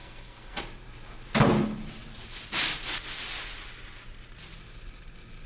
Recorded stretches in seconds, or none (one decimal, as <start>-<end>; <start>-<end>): 0.6-5.5